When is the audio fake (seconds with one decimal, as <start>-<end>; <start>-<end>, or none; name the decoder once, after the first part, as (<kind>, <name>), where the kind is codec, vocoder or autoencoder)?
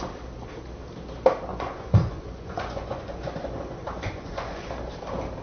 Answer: 1.5-4.7 (vocoder, Vocos)